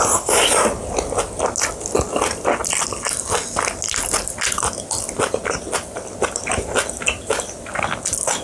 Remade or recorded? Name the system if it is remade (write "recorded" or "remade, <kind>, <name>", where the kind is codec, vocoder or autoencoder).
recorded